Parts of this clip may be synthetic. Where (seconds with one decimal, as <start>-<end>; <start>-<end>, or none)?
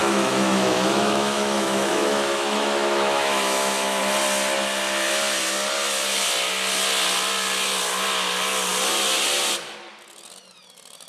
0.0-4.0